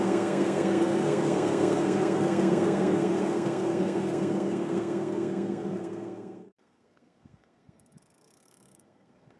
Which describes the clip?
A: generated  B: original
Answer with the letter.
A